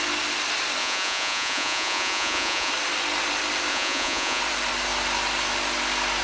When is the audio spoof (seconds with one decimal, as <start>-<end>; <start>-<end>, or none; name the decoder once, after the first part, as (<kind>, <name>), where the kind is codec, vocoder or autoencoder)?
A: 0.8-2.7 (vocoder, Vocos); 3.7-4.4